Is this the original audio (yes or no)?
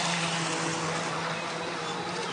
yes